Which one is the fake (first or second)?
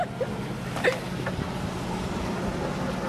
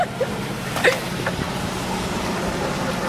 second